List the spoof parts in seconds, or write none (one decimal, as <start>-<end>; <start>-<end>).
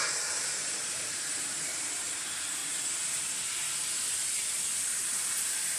0.0-2.6; 4.8-5.8